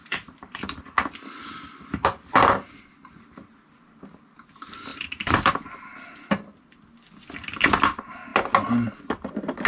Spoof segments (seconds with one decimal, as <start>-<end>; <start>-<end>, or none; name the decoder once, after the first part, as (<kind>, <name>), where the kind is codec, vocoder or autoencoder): 0.0-0.8 (vocoder, BigVGAN v2); 4.9-5.5